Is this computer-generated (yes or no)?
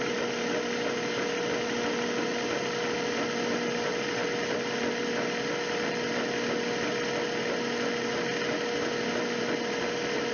no